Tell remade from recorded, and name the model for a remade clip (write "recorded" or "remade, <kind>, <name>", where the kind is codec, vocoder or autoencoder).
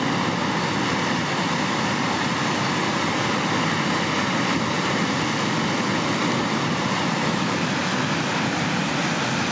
recorded